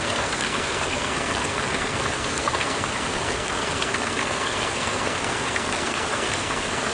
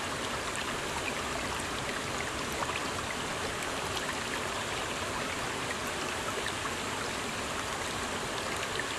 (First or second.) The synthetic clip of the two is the first